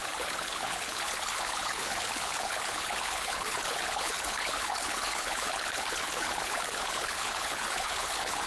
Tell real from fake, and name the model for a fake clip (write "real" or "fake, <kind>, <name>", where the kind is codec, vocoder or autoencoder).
fake, codec, HILCodec